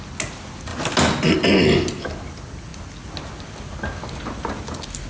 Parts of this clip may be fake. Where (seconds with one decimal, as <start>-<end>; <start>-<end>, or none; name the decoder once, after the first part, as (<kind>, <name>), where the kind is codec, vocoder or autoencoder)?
none